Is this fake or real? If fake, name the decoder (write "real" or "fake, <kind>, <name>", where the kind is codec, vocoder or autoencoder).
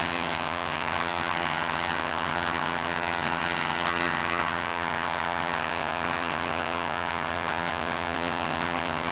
fake, vocoder, HiFi-GAN